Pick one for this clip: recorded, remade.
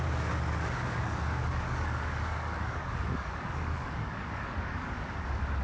remade